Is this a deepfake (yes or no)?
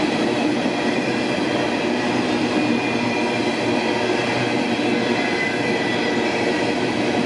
no